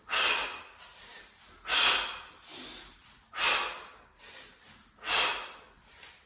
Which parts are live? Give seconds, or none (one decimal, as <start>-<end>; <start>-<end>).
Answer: 0.0-6.3